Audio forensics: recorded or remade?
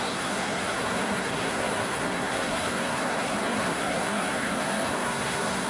remade